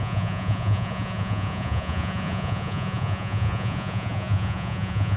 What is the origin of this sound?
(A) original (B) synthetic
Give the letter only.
B